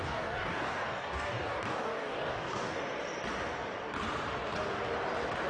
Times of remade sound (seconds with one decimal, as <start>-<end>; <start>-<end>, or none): 0.0-2.8